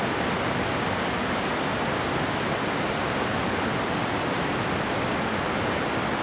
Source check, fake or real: real